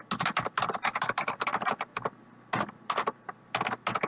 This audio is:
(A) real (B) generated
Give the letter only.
A